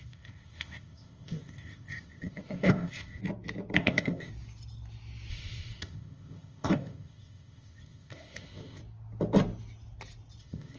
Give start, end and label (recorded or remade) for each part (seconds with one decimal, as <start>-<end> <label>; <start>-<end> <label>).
0.0-3.2 remade; 3.2-3.8 recorded; 3.8-4.3 remade; 4.3-5.3 recorded; 5.3-8.8 remade; 8.8-10.4 recorded; 10.4-10.8 remade